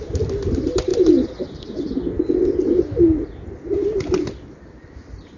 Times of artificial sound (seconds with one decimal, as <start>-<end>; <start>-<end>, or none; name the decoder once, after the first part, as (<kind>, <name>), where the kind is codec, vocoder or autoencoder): none

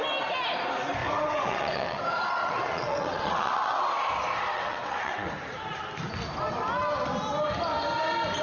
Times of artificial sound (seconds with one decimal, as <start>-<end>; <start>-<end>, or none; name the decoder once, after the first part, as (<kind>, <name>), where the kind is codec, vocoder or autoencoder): 1.0-2.0 (vocoder, WaveNeXt); 2.4-3.9; 4.5-5.3

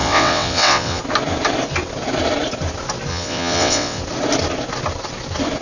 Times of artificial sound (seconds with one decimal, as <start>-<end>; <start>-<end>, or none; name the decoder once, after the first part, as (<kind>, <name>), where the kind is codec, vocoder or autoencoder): 0.0-1.0 (vocoder, WaveNeXt); 3.1-4.0

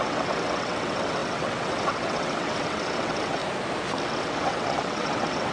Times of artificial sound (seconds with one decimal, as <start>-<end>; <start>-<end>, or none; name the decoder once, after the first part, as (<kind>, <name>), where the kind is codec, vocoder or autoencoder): 0.0-3.4 (vocoder, WaveNeXt); 4.1-5.5

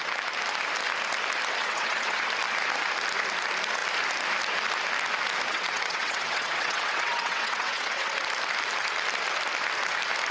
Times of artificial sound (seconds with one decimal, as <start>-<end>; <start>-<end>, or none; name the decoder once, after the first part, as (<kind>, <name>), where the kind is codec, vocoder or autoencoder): 1.6-2.3 (vocoder, WaveNeXt); 5.5-8.1